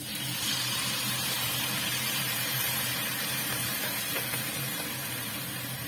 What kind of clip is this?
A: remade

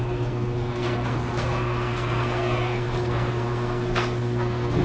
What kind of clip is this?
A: remade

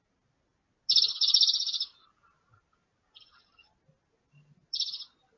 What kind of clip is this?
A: recorded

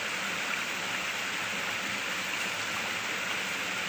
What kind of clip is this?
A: recorded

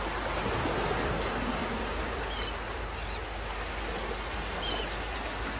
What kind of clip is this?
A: recorded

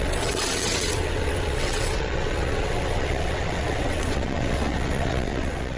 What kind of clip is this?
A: remade